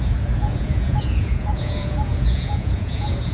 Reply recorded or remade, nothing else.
remade